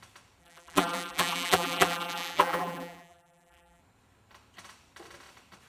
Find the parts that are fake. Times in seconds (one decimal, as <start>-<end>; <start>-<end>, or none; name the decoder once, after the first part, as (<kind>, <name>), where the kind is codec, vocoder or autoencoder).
0.4-3.8 (vocoder, BigVGAN v2)